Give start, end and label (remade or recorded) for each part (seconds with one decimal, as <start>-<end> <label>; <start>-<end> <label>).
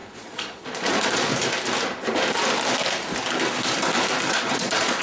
0.0-1.3 remade; 1.3-4.3 recorded; 4.3-5.0 remade